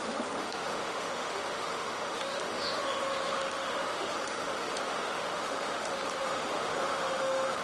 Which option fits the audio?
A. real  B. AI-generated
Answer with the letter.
B